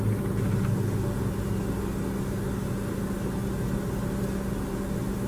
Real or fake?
real